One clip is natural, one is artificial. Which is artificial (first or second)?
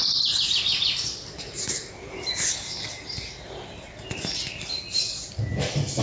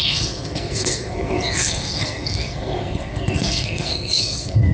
second